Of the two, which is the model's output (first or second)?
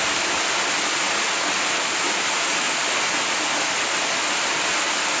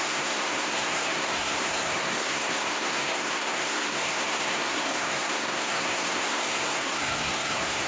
second